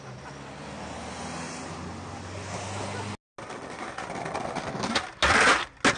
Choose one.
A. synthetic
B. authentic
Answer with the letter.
B